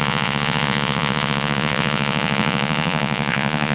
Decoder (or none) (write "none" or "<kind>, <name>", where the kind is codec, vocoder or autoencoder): vocoder, Vocos